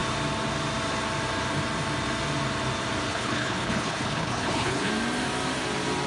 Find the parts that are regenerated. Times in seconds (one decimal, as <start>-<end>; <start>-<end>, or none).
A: 3.1-4.9